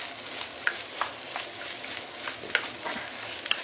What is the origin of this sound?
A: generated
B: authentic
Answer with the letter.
B